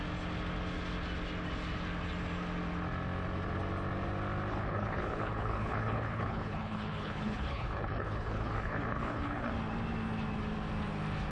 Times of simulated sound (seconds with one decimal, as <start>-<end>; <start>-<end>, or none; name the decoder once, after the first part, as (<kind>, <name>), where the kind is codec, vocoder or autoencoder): 4.5-9.5 (codec, HILCodec)